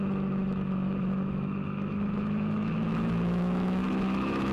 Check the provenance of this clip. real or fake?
fake